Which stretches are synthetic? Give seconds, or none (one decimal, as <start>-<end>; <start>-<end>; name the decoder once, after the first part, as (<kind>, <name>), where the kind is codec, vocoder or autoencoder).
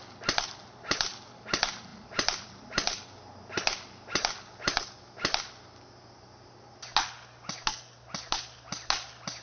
none